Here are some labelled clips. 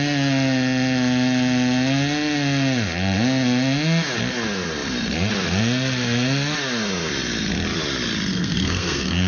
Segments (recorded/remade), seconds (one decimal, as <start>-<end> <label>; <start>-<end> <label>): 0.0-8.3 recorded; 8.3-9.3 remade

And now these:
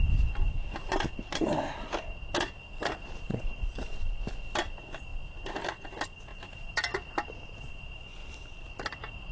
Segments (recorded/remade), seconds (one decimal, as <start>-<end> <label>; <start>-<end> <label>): 0.0-9.3 recorded

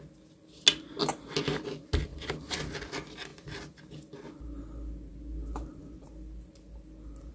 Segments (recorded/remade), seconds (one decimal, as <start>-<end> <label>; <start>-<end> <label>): 0.0-7.3 recorded

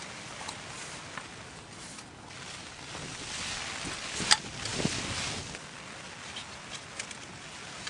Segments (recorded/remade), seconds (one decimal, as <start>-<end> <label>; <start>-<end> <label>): 0.0-7.9 recorded